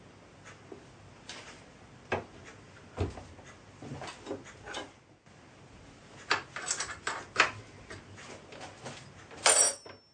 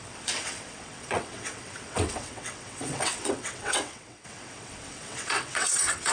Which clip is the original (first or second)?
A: first